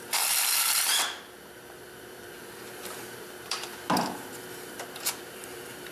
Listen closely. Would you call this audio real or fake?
fake